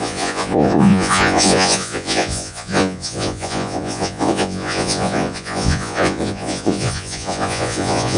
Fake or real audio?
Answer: fake